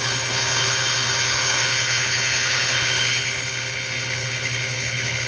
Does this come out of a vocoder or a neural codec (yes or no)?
yes